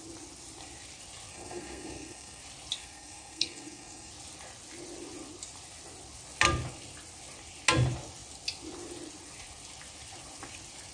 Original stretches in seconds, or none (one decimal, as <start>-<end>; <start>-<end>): 0.0-1.3; 2.4-2.8; 4.1-10.9